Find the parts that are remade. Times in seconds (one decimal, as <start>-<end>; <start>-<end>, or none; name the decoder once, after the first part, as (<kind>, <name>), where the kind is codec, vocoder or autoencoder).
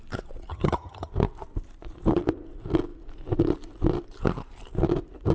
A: 0.5-1.1 (vocoder, HiFi-GAN)